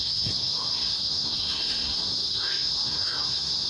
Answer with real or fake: fake